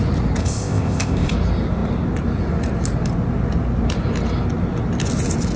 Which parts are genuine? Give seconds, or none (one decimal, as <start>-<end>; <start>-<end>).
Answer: 0.0-0.4; 1.3-5.6